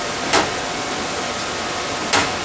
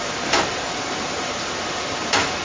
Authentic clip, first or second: first